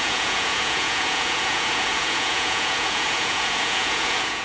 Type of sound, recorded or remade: remade